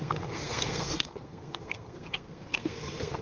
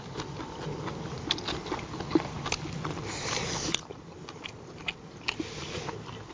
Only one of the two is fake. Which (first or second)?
first